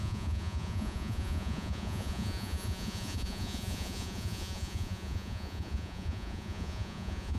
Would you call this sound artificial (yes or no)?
yes